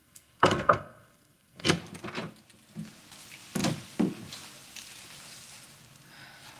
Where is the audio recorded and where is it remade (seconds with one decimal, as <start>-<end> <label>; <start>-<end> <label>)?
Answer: 0.0-1.8 remade; 1.8-6.6 recorded